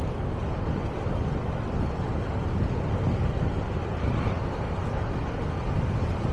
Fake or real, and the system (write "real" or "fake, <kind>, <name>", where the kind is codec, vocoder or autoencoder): real